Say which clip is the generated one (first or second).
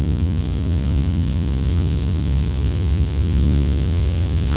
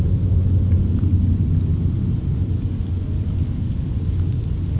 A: first